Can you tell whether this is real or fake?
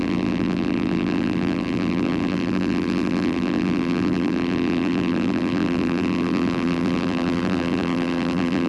fake